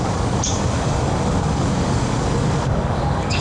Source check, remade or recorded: remade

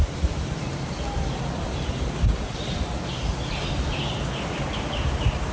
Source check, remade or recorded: recorded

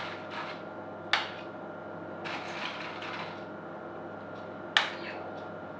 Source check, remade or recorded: recorded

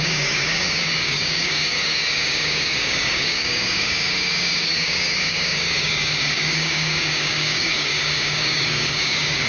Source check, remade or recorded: remade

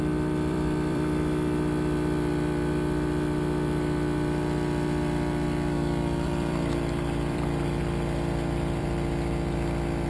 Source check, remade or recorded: remade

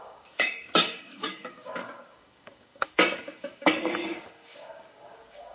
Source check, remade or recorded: remade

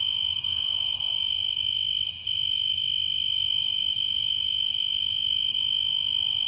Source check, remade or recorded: recorded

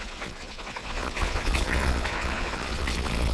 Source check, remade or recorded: remade